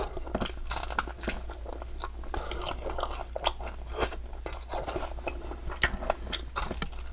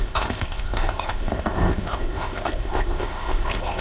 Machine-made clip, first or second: second